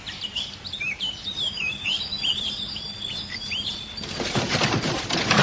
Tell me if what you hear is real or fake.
fake